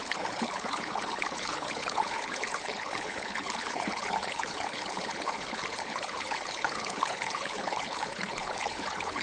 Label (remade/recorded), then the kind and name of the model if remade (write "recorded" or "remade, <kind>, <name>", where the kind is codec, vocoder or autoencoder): remade, codec, HILCodec